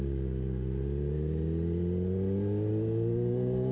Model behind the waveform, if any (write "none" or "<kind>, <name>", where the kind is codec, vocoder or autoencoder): none